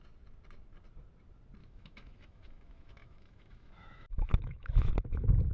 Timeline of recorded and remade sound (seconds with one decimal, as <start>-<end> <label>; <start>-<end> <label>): 0.0-1.6 recorded; 1.6-4.9 remade; 4.9-5.5 recorded